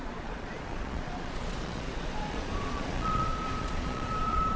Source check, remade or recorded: remade